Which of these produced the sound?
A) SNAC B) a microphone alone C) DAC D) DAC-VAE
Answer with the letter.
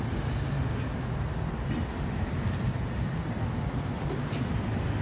B